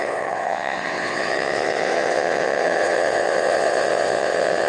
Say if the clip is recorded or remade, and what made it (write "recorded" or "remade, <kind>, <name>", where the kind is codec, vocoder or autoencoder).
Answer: remade, vocoder, WaveNeXt